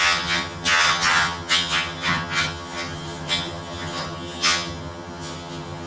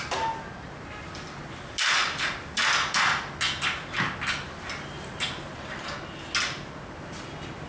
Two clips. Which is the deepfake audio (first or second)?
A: first